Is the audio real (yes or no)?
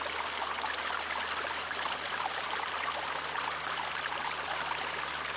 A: yes